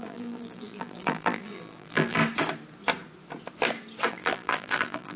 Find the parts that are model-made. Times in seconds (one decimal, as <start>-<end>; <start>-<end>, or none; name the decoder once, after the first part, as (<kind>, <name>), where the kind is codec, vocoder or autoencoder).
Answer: 0.0-2.2 (vocoder, BigVGAN v2); 4.1-5.2